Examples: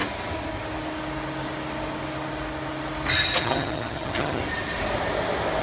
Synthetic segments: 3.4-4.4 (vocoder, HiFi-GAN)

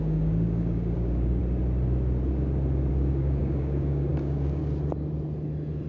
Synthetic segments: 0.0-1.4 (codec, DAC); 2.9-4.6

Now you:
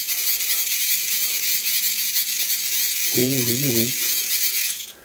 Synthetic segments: 0.0-5.0 (vocoder, Vocos)